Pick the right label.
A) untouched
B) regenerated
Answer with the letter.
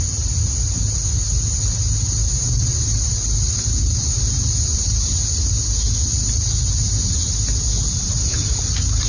A